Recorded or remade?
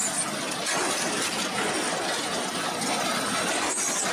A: recorded